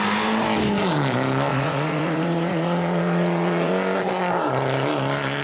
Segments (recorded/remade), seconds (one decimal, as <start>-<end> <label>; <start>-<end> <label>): 0.0-1.5 recorded; 1.5-3.7 remade; 3.7-5.4 recorded